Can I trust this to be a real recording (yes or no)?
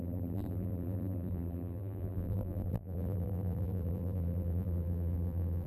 no